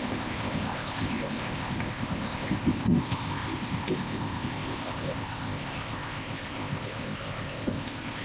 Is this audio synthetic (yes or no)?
yes